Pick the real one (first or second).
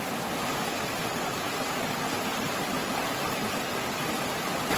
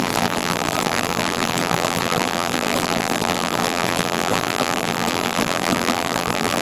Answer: first